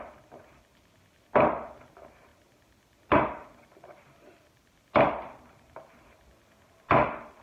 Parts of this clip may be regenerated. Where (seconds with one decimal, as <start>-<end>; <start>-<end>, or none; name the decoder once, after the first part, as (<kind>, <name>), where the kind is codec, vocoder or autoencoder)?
none